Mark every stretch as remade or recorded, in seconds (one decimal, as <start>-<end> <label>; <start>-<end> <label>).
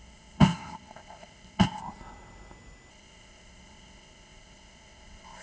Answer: 0.0-1.8 remade; 1.8-2.9 recorded; 2.9-5.4 remade